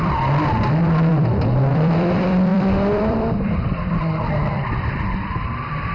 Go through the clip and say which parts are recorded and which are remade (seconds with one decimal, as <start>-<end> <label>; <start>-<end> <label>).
0.0-5.9 remade